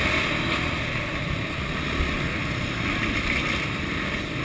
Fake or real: real